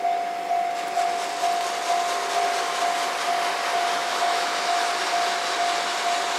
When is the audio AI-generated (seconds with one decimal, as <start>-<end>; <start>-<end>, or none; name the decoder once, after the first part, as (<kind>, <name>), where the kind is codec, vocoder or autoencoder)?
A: 4.0-4.9 (autoencoder, DAC-VAE)